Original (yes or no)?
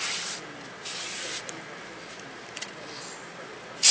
yes